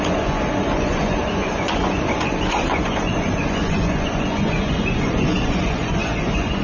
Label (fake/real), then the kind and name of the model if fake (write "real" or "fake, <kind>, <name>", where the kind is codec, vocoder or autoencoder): fake, vocoder, Vocos